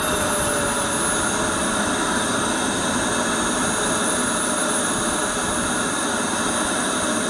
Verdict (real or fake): real